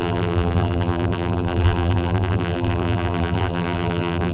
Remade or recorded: remade